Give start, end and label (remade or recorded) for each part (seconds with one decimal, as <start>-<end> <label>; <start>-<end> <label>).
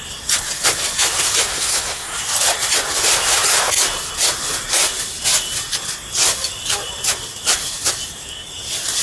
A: 0.0-1.5 recorded; 1.5-2.2 remade; 2.2-9.0 recorded